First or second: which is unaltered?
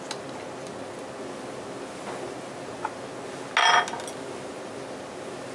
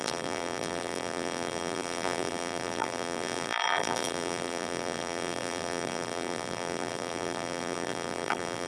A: first